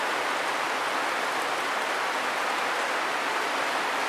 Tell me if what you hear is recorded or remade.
recorded